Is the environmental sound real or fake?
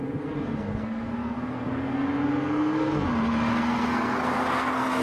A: fake